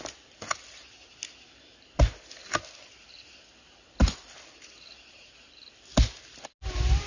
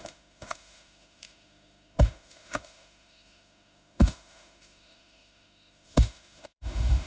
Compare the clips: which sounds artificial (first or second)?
second